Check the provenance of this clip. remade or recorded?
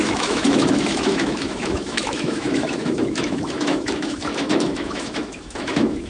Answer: remade